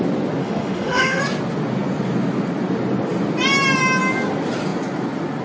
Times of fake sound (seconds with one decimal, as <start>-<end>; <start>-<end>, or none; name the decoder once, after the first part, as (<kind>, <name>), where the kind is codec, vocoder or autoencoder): 0.4-1.2 (autoencoder, DAC-VAE)

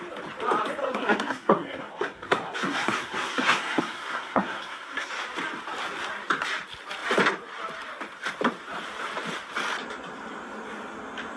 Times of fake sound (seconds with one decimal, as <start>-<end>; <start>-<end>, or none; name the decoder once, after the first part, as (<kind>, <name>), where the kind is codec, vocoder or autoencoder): 0.8-5.1 (codec, SNAC)